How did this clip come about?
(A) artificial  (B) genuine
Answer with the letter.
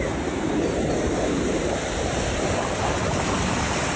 A